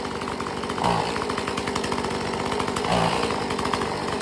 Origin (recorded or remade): recorded